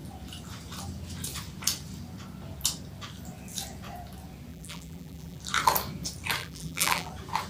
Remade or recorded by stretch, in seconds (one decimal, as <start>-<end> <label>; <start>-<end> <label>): 0.0-4.5 recorded; 4.5-5.4 remade; 5.4-6.4 recorded; 6.4-7.1 remade; 7.1-7.5 recorded